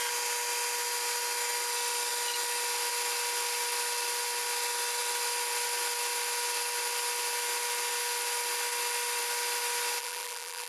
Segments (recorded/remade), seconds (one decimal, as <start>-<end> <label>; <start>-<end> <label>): 0.0-10.0 recorded; 10.0-10.7 remade